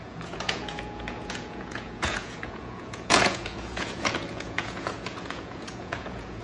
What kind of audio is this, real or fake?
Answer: fake